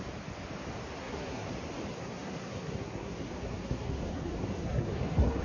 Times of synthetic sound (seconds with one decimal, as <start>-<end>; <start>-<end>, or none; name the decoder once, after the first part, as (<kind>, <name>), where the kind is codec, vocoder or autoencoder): 1.0-1.5 (codec, SNAC); 1.9-5.4